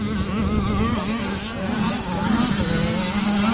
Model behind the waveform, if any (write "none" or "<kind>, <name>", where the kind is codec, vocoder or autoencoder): none